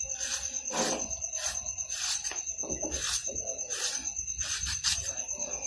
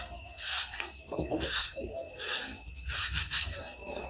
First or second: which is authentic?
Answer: first